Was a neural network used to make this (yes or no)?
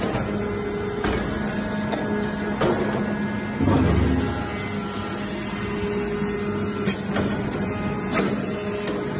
no